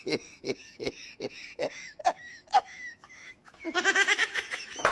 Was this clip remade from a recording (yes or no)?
yes